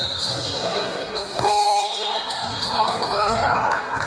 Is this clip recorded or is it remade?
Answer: remade